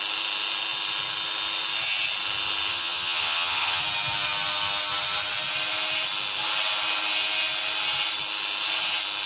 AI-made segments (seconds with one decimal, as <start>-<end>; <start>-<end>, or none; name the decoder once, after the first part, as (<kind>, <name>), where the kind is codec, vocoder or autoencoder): 2.7-3.8 (vocoder, HiFi-GAN)